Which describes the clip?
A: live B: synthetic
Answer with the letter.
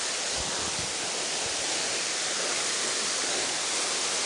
A